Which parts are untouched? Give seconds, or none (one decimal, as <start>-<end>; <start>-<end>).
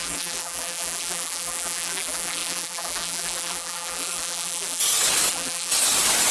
4.8-5.3; 5.7-6.3